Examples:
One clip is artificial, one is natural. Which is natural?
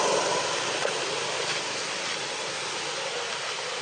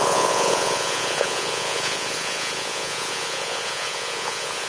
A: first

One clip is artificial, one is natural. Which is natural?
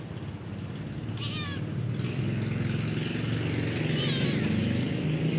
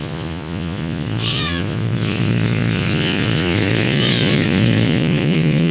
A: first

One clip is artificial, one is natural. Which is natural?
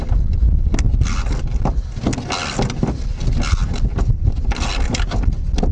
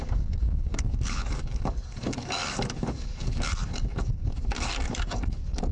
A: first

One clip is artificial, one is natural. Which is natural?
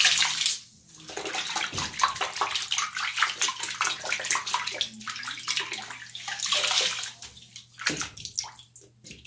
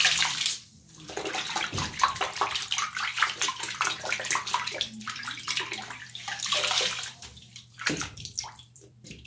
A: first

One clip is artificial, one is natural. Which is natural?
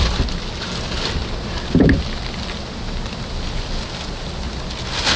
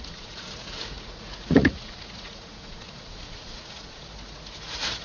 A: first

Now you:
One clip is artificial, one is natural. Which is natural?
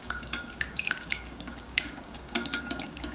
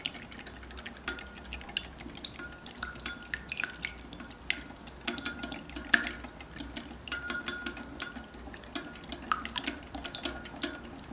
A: second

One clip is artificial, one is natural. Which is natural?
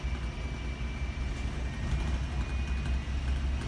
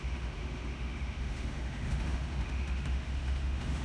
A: first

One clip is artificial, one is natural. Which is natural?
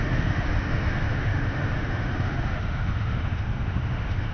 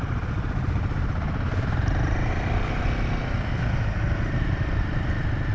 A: second